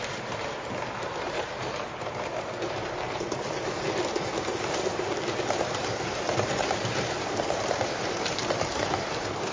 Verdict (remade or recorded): remade